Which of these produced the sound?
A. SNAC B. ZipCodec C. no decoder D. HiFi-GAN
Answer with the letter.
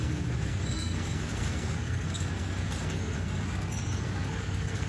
A